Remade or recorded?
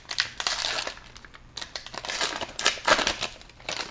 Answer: recorded